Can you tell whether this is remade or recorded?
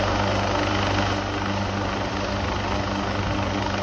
recorded